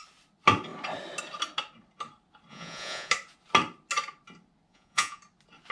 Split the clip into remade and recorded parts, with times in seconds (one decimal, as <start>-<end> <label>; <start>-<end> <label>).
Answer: 0.0-2.5 recorded; 2.5-3.1 remade; 3.1-4.7 recorded; 4.7-5.2 remade; 5.2-5.7 recorded